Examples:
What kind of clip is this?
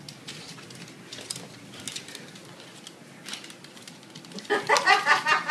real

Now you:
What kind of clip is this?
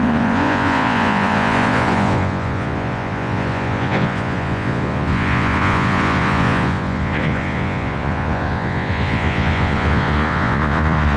fake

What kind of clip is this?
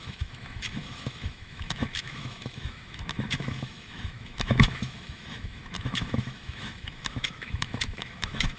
fake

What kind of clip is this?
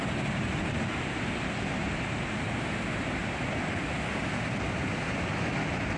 real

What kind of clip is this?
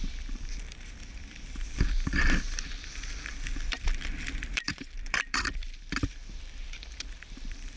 fake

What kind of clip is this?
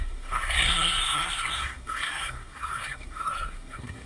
fake